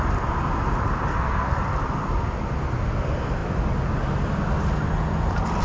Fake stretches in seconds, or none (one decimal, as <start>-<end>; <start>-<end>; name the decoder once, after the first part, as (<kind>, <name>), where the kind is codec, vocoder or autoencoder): 1.1-1.6 (codec, SNAC)